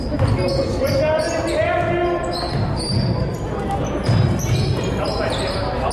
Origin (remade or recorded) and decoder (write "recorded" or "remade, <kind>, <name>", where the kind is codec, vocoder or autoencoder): recorded